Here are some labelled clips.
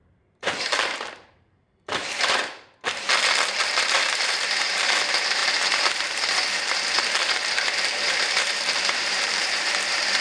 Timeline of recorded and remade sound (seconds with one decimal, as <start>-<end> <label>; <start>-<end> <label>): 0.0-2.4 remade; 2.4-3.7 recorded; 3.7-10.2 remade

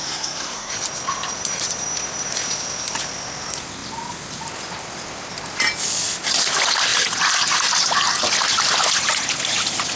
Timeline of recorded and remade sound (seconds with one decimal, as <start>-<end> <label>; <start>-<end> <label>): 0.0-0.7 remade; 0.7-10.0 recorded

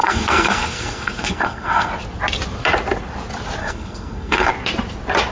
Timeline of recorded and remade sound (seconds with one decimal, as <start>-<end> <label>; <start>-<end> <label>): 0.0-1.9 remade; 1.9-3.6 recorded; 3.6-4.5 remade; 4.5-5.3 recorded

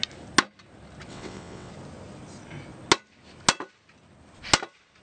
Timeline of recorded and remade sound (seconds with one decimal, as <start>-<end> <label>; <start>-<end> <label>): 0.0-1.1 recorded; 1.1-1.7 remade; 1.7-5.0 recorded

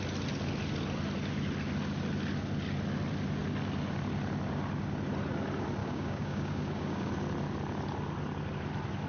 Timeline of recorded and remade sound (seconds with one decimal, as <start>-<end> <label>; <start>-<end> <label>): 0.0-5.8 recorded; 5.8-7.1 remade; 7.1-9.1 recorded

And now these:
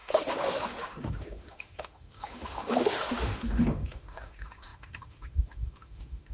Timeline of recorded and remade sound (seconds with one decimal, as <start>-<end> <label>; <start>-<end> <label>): 0.0-6.3 remade

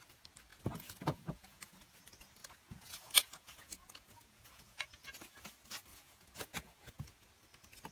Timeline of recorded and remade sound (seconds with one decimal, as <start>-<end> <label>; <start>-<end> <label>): 0.0-0.5 recorded; 0.5-1.9 remade; 1.9-2.4 recorded; 2.4-5.5 remade; 5.5-5.9 recorded; 5.9-7.3 remade; 7.3-7.9 recorded

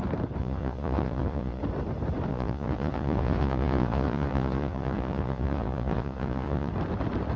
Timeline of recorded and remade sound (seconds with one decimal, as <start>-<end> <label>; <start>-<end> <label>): 0.0-0.4 recorded; 0.4-1.6 remade; 1.6-2.3 recorded; 2.3-6.7 remade; 6.7-7.4 recorded